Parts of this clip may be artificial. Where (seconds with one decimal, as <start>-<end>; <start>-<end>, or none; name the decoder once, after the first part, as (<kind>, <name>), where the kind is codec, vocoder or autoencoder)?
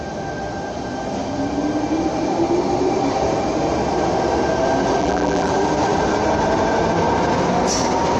5.0-5.5 (vocoder, BigVGAN v2)